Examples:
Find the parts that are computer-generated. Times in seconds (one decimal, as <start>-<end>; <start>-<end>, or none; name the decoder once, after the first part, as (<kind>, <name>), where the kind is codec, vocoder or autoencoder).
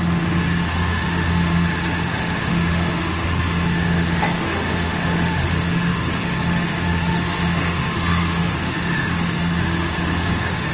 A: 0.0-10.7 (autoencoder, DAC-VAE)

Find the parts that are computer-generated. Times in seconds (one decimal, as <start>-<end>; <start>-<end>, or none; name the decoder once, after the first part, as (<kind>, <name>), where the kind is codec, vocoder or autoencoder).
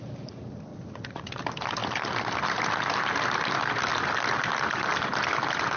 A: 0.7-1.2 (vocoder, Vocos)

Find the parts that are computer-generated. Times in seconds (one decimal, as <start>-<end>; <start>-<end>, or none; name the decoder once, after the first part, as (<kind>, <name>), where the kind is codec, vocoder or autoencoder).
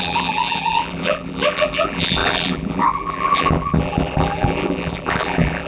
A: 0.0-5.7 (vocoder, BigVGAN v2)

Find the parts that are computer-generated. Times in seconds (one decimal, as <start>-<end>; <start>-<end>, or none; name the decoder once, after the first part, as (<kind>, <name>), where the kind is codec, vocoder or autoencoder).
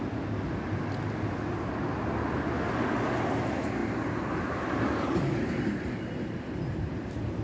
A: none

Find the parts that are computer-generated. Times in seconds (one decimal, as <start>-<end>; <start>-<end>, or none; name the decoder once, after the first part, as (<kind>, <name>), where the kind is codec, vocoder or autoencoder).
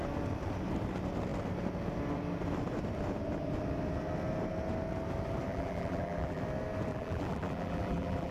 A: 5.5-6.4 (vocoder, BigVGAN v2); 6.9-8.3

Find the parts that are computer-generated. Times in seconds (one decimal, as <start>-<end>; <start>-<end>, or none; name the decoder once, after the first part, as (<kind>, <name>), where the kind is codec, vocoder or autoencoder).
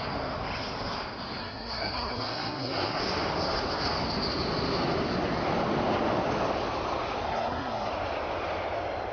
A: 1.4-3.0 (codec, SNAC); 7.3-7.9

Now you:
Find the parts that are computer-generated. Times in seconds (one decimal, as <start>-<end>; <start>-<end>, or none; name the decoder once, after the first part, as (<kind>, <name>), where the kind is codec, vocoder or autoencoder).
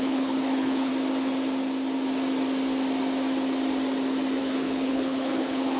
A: 0.0-0.9 (codec, HILCodec); 4.4-5.8